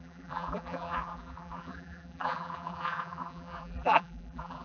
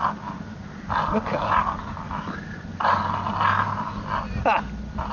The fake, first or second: first